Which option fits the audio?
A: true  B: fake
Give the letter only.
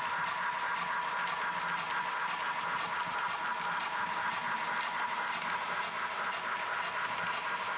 A